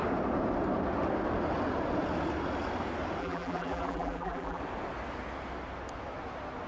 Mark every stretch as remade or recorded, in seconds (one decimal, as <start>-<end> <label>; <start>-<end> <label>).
0.0-3.2 recorded; 3.2-4.6 remade; 4.6-6.7 recorded